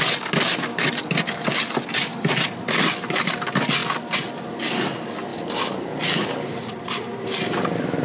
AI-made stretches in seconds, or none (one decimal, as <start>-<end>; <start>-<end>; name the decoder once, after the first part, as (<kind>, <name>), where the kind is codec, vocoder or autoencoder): 2.1-2.7 (vocoder, BigVGAN v2); 5.3-7.0